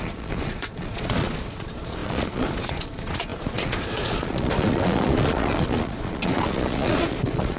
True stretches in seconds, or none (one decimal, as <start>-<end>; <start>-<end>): none